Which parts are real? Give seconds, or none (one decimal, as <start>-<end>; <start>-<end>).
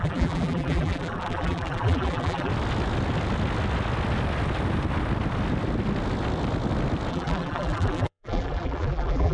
2.5-7.1